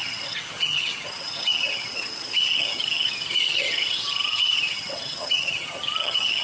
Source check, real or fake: fake